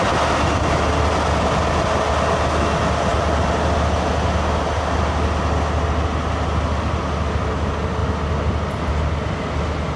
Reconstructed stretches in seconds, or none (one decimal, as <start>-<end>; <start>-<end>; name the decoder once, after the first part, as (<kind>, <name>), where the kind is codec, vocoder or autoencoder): none